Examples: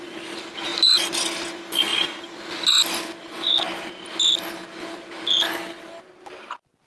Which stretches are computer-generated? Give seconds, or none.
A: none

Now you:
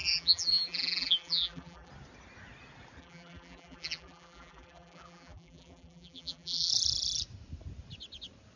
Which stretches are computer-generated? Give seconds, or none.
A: 0.0-1.9 (vocoder, BigVGAN v2); 3.0-6.7